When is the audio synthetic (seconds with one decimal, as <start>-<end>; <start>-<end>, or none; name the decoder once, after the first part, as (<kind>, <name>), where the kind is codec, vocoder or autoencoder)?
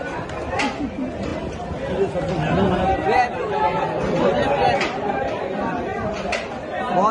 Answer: none